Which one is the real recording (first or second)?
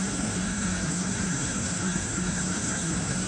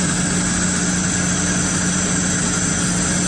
second